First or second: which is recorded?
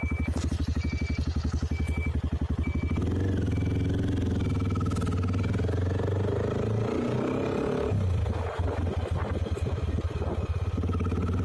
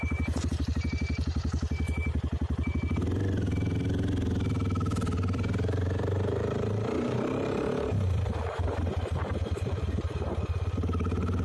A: first